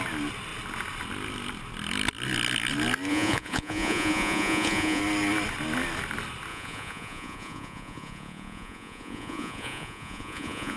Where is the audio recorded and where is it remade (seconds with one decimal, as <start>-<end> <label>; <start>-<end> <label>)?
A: 0.0-3.1 recorded; 3.1-5.0 remade; 5.0-6.5 recorded; 6.5-10.8 remade